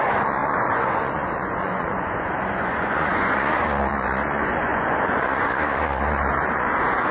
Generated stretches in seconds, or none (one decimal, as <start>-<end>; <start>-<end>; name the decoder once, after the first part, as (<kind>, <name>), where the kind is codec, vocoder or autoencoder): 0.0-7.1 (vocoder, Vocos)